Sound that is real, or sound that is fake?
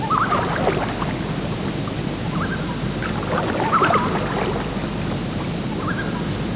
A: real